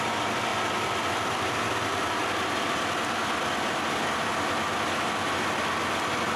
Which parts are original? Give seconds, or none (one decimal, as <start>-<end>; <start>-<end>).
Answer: 0.0-0.5; 4.3-6.4